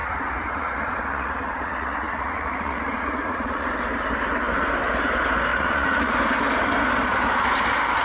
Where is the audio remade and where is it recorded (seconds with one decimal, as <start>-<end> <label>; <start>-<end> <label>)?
0.0-3.7 remade; 3.7-5.5 recorded; 5.5-6.1 remade; 6.1-8.0 recorded